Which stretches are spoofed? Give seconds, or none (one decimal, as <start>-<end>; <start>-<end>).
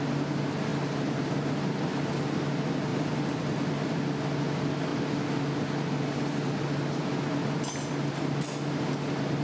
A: 2.9-3.7